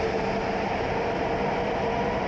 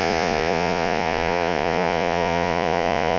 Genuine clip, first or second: first